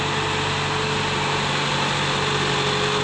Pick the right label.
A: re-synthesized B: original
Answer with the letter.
B